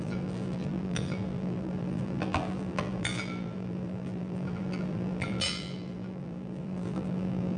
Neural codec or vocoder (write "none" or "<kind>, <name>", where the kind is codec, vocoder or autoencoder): vocoder, BigVGAN v2